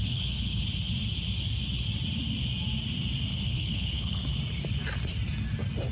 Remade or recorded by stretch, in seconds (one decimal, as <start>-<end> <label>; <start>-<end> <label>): 0.0-0.6 remade; 0.6-3.3 recorded; 3.3-4.2 remade; 4.2-5.9 recorded